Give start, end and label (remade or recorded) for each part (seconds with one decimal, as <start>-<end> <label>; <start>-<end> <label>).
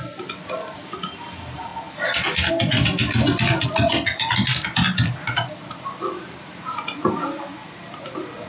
0.0-8.5 recorded